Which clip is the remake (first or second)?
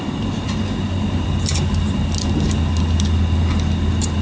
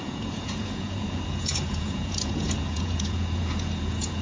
second